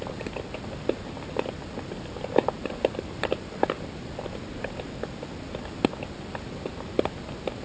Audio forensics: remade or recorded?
recorded